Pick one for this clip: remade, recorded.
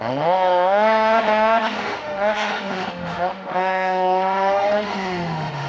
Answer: remade